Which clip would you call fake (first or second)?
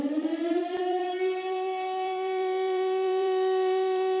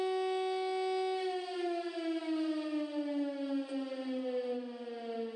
first